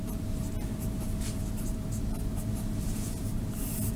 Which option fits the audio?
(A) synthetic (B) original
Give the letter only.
A